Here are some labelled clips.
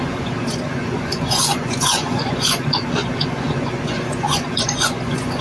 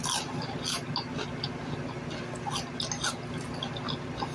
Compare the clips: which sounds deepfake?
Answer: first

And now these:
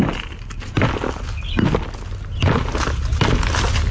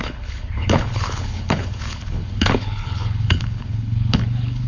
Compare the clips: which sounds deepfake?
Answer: second